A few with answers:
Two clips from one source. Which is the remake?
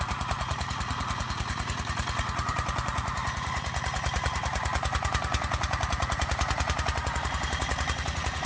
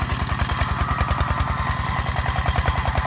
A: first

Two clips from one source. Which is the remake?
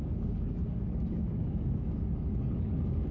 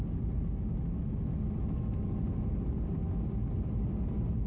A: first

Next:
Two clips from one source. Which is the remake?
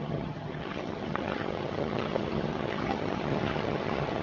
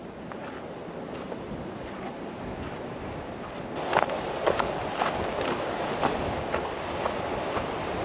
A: first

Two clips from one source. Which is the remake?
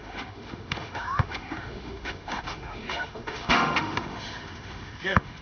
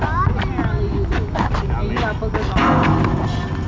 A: first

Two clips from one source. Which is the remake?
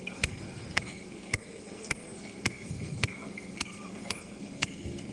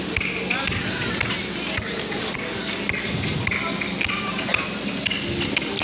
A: first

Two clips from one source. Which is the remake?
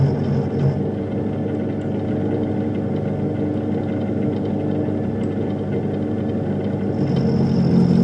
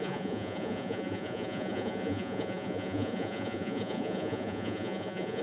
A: second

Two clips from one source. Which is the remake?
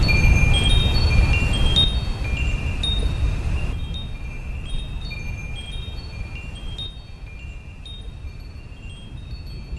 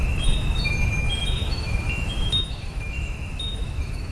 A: second